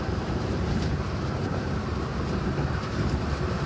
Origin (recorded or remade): remade